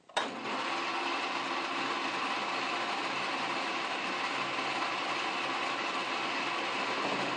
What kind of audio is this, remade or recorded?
recorded